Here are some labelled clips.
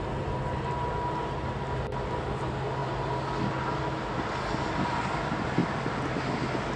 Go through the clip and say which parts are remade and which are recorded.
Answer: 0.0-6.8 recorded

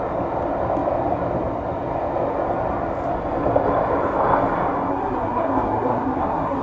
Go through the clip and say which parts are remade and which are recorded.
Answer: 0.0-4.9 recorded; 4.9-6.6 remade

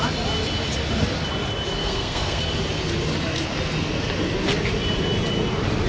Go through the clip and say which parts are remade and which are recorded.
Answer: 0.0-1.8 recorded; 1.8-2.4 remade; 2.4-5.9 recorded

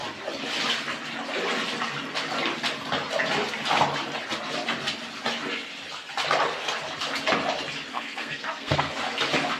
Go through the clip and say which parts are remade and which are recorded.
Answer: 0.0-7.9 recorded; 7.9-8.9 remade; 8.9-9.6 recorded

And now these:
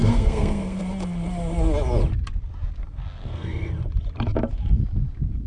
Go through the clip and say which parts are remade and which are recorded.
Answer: 0.0-0.8 remade; 0.8-2.8 recorded; 2.8-3.7 remade; 3.7-5.5 recorded